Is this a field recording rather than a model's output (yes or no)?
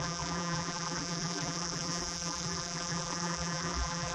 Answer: no